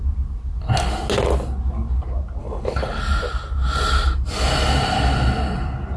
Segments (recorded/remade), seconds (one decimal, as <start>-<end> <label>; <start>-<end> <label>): 0.0-2.4 recorded; 2.4-3.0 remade; 3.0-6.0 recorded